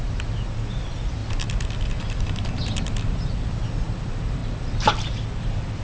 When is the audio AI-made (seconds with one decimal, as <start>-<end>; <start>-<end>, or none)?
4.4-5.8